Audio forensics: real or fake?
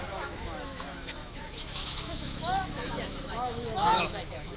fake